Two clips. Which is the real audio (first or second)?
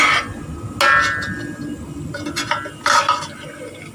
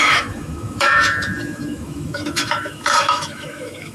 first